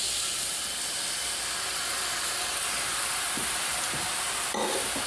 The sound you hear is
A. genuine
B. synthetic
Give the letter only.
A